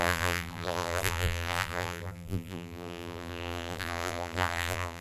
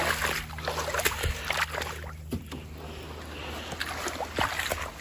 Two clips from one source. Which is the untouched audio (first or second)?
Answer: second